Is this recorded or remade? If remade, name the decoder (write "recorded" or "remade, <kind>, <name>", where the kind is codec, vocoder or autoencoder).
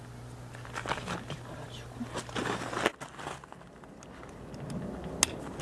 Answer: recorded